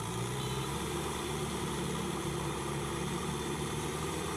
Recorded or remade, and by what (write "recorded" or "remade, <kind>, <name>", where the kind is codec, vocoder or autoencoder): remade, vocoder, BigVGAN v2